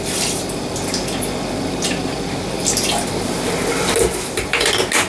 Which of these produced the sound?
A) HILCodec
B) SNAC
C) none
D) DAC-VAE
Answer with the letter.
C